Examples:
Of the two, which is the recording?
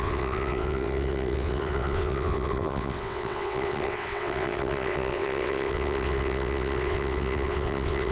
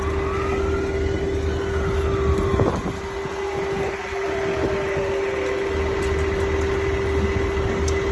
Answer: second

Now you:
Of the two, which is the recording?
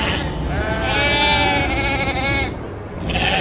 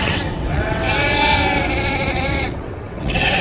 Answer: first